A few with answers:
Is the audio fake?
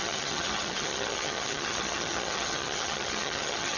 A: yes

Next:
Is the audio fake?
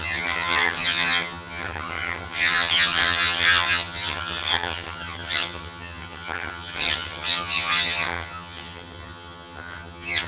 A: yes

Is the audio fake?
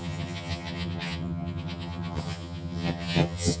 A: yes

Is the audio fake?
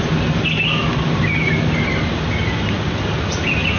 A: no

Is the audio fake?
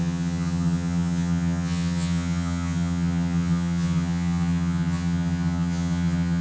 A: yes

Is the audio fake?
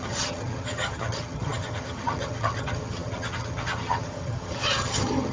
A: yes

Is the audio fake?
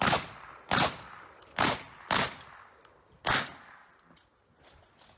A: no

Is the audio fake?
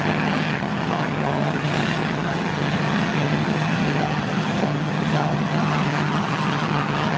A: yes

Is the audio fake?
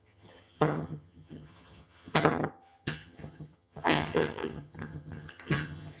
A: yes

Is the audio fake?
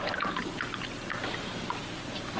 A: no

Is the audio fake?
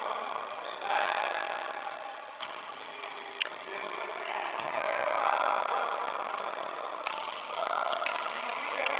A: yes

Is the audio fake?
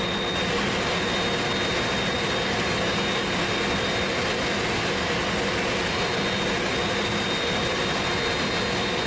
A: no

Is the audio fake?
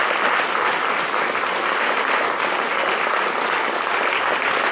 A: no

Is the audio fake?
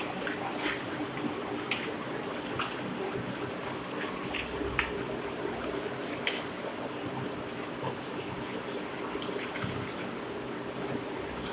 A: no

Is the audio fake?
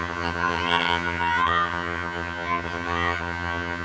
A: yes